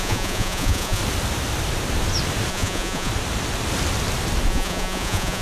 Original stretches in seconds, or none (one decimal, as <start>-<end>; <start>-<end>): 1.0-2.5; 3.1-4.5